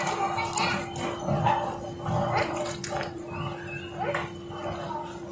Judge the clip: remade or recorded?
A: recorded